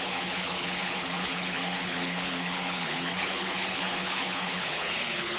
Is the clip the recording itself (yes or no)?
no